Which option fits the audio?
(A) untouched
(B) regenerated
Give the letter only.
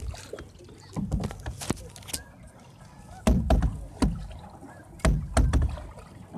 A